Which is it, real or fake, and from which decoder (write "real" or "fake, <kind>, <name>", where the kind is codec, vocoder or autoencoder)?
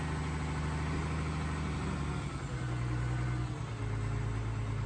real